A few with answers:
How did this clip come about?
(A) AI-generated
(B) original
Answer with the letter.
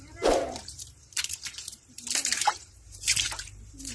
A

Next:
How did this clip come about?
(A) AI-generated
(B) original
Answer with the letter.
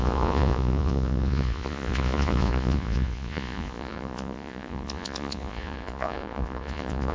A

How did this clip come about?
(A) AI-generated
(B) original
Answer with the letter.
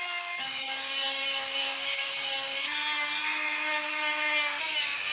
A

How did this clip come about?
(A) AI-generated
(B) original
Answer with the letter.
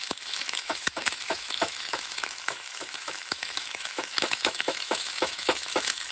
A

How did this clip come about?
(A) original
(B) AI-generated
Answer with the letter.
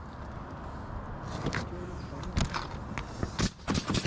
A